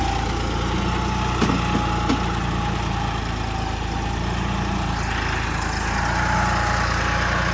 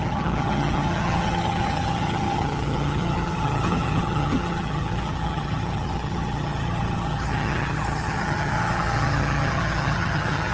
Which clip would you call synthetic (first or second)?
second